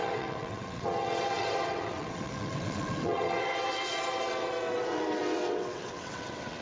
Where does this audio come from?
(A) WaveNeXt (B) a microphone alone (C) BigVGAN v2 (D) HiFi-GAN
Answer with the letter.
A